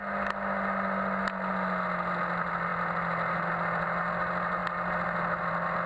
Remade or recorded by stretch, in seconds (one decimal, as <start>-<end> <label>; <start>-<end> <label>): 0.0-5.9 recorded